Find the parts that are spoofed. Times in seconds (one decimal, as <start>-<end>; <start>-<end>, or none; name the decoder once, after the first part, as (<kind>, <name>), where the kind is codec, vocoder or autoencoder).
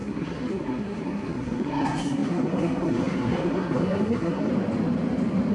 0.0-4.5 (codec, SNAC)